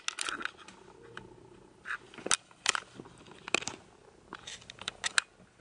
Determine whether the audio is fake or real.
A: real